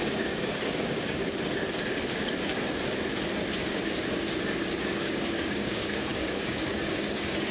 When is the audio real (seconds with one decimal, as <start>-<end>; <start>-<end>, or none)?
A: 1.2-4.8